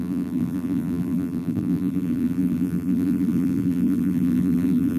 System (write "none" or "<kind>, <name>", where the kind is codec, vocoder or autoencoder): vocoder, BigVGAN v2